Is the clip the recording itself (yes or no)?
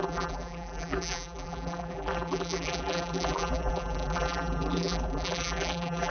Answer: no